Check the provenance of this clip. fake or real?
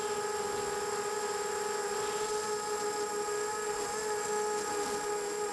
real